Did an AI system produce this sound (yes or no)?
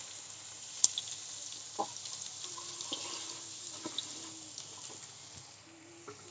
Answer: no